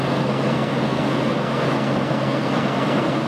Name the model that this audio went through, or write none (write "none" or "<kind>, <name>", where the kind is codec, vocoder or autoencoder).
codec, SNAC